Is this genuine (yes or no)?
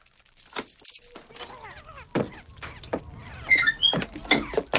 yes